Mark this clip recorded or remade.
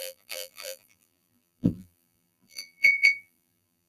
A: remade